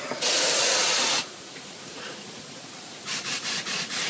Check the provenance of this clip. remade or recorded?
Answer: remade